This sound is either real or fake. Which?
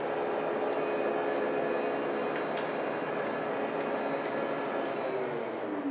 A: real